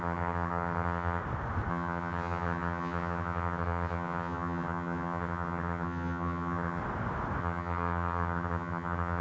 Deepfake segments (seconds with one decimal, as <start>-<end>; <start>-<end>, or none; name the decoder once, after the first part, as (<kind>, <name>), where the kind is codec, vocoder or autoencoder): 0.0-1.2 (vocoder, HiFi-GAN); 1.7-6.8; 7.4-9.2